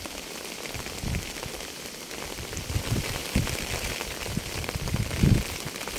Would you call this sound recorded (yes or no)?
no